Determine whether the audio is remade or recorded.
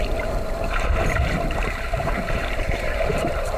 remade